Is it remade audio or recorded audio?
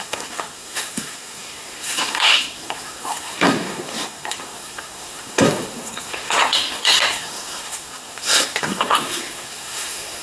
remade